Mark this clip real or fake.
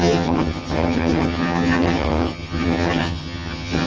fake